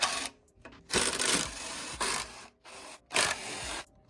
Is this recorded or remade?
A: recorded